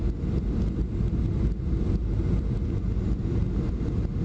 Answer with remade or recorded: recorded